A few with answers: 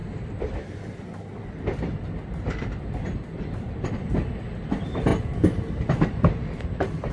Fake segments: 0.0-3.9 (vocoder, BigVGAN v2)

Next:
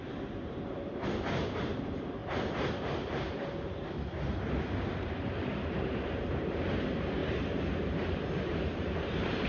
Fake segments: 0.0-2.2 (vocoder, BigVGAN v2); 5.0-9.5

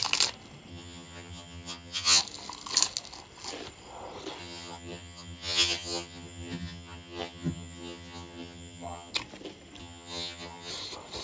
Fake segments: 0.7-2.2 (vocoder, HiFi-GAN); 4.4-9.1; 9.8-10.7

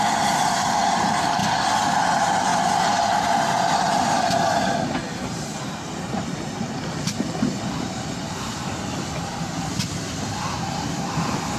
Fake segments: 0.0-1.4 (vocoder, BigVGAN v2); 2.0-2.5; 3.7-11.6